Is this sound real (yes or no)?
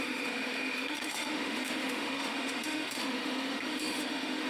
no